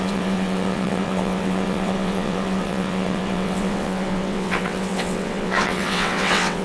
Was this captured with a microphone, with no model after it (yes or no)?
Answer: no